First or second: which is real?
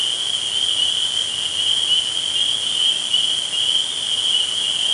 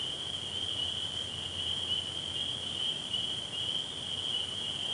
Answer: first